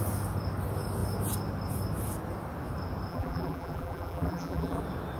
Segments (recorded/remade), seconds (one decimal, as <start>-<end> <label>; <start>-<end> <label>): 0.0-3.1 recorded; 3.1-4.8 remade; 4.8-5.2 recorded